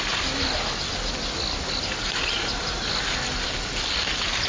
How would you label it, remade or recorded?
recorded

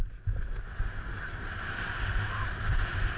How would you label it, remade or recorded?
recorded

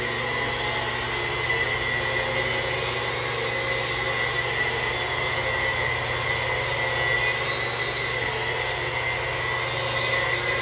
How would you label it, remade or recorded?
recorded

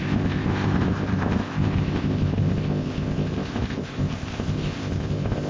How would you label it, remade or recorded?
remade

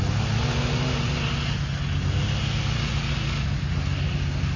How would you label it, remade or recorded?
recorded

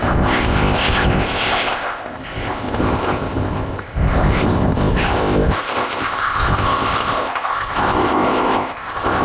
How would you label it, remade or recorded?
remade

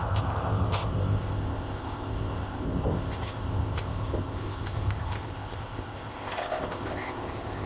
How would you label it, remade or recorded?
remade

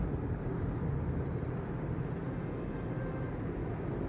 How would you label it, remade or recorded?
recorded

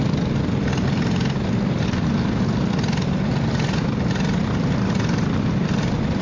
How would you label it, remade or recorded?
recorded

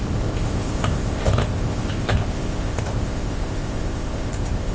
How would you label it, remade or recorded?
remade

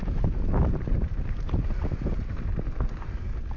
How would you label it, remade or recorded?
recorded